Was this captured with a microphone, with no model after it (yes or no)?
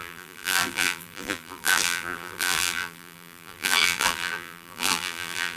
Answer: no